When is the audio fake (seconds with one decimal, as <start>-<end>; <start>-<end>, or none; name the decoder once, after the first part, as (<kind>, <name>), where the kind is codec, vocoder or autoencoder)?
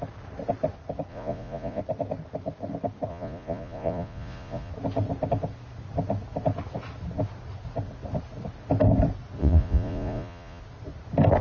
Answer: 1.1-1.8 (vocoder, Vocos); 3.1-4.7; 9.4-10.6